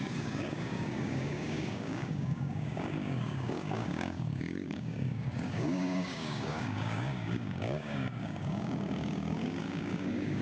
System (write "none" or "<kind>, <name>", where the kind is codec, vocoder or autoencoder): codec, DAC